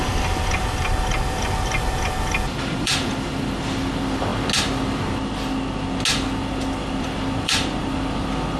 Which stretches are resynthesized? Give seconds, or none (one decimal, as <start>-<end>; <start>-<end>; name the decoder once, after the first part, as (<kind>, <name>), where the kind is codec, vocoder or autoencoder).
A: 0.0-4.3 (vocoder, BigVGAN v2); 6.4-8.6